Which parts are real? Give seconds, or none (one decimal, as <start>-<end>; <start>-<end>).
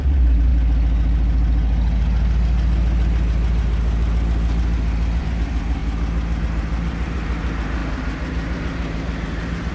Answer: 0.5-5.2; 5.8-6.4